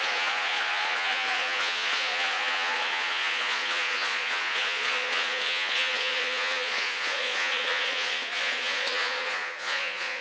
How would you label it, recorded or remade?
remade